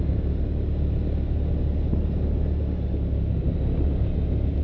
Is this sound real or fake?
real